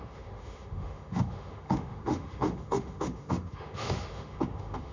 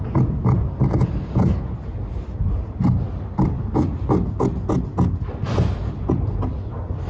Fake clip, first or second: first